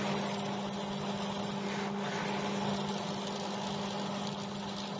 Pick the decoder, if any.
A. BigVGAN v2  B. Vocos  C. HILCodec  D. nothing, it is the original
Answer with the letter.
D